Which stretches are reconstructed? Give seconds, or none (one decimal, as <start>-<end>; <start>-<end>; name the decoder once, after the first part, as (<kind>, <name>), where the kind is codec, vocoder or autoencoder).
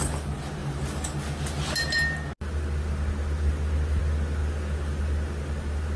none